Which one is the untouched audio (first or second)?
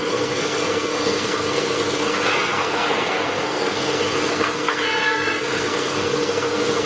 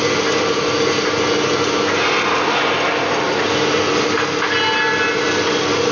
second